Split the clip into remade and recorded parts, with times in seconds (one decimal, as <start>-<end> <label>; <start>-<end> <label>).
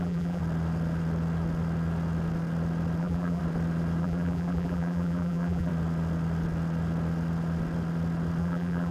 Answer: 0.0-0.4 remade; 0.4-3.0 recorded; 3.0-3.4 remade; 3.4-4.0 recorded; 4.0-5.7 remade; 5.7-8.4 recorded; 8.4-8.9 remade